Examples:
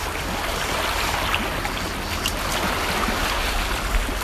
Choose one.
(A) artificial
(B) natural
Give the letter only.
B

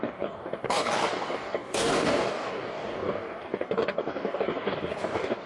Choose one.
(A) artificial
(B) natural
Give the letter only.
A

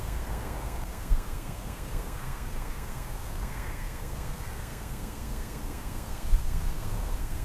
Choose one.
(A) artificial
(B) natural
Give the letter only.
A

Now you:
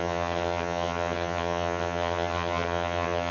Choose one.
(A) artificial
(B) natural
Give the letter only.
A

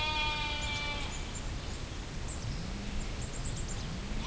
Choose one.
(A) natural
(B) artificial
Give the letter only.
A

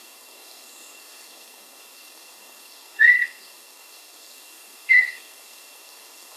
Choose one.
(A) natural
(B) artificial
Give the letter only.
B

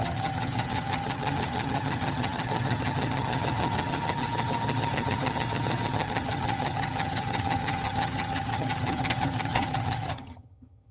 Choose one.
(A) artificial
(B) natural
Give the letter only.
A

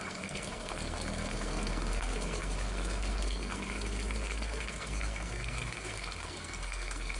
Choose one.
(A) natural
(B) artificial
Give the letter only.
B